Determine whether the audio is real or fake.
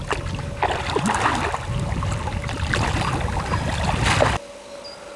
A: real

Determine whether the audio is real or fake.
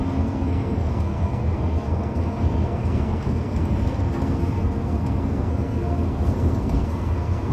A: fake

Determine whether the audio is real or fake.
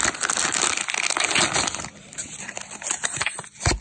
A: real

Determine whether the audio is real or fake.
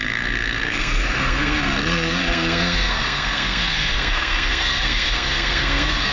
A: fake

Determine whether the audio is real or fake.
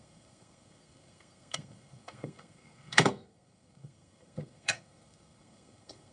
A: fake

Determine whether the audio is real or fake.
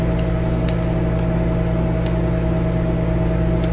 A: real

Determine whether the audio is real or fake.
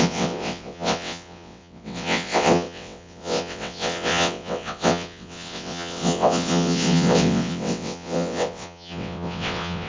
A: fake